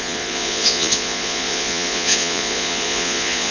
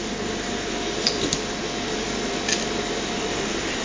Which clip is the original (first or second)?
second